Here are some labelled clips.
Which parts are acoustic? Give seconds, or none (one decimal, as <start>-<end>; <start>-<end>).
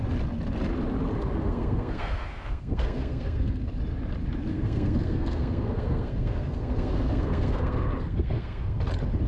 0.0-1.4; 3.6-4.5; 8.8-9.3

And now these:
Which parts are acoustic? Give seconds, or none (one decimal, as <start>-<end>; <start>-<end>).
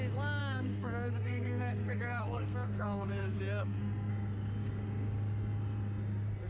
0.0-0.4; 4.1-6.5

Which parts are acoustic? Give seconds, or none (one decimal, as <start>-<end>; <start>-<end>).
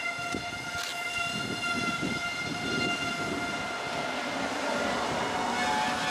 0.0-6.1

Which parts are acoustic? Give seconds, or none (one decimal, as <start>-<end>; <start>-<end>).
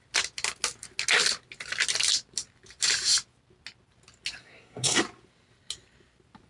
0.0-4.4; 5.0-6.5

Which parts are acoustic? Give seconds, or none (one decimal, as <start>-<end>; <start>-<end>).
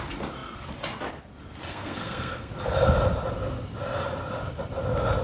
0.0-1.7; 2.5-5.2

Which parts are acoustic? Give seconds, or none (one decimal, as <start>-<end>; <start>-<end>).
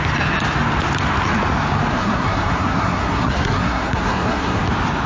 0.0-1.9; 4.6-5.1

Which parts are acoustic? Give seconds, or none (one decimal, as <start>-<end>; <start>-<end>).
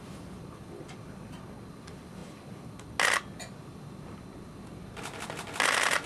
0.0-6.1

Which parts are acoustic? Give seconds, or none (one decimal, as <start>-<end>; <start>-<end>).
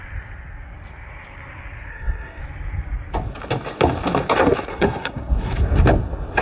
0.0-1.9; 2.4-4.7; 5.5-6.4